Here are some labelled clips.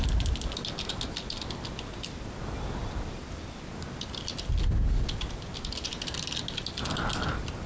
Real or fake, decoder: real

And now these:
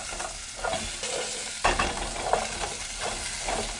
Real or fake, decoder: real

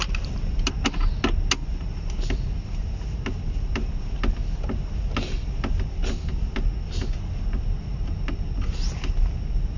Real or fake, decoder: real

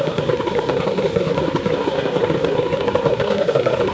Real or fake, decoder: fake, codec, SNAC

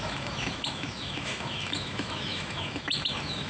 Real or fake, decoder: fake, autoencoder, DAC-VAE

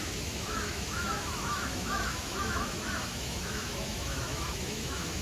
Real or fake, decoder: fake, autoencoder, DAC-VAE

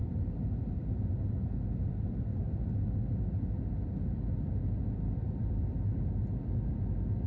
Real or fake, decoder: real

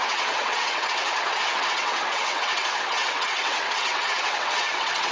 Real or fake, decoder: fake, vocoder, WaveNeXt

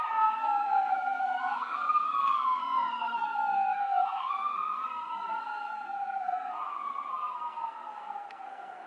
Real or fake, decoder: fake, codec, SNAC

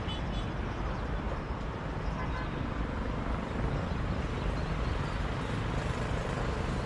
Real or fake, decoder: real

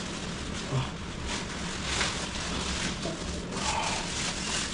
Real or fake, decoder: real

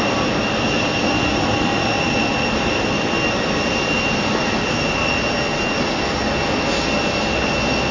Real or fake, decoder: real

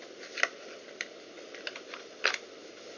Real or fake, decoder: real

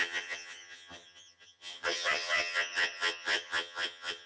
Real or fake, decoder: fake, vocoder, HiFi-GAN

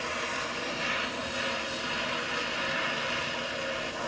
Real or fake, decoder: real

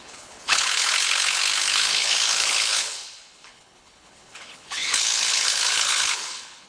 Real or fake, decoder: fake, codec, HILCodec